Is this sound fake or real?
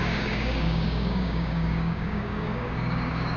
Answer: fake